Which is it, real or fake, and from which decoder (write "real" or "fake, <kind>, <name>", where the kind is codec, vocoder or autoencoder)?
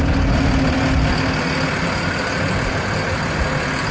real